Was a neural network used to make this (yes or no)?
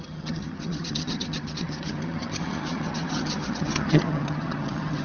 yes